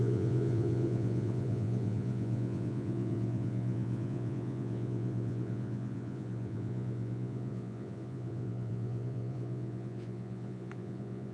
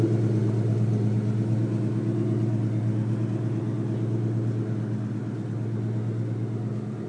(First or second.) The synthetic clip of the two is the first